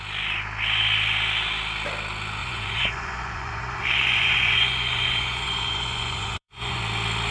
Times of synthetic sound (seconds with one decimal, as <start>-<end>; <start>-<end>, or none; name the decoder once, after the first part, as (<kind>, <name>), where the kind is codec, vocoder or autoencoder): 2.4-6.8 (vocoder, Vocos)